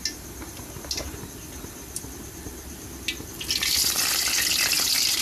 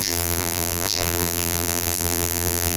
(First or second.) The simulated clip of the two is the second